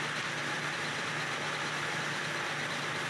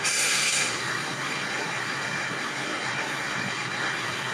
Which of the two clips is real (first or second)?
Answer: first